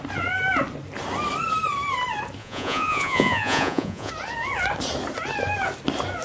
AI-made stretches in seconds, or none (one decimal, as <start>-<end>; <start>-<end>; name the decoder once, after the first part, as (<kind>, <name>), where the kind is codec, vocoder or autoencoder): 2.4-4.1 (vocoder, Vocos)